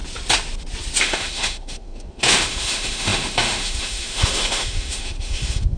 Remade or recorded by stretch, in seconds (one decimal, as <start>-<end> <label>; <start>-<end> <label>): 0.0-1.0 recorded; 1.0-5.8 remade